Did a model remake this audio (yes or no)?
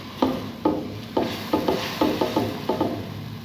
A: no